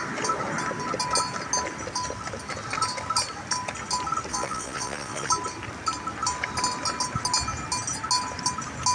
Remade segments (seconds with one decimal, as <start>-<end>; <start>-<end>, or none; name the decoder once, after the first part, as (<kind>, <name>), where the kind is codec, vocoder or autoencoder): 4.3-5.3 (vocoder, WaveNeXt)